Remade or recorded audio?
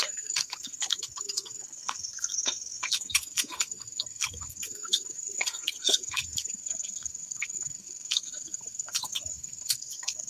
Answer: remade